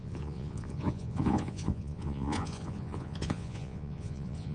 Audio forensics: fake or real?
fake